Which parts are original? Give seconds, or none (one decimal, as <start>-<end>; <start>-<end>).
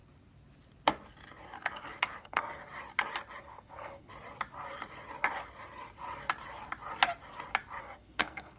0.0-2.2; 2.6-3.4; 4.1-7.8